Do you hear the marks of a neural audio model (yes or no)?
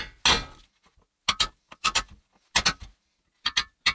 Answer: no